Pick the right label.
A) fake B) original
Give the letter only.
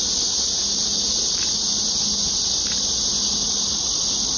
B